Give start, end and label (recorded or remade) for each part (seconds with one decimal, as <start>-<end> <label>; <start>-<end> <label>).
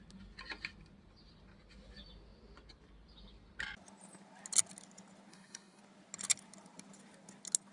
0.0-5.3 recorded; 5.3-5.8 remade; 5.8-7.7 recorded